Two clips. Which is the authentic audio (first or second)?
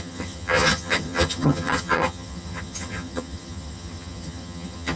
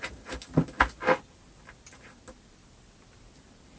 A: second